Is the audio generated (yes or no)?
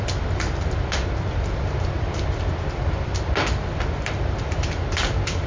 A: no